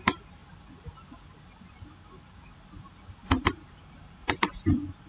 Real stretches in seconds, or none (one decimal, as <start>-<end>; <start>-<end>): 0.4-3.5

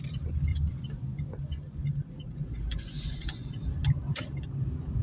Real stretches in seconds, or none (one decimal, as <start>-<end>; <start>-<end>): 0.0-0.5; 3.5-5.0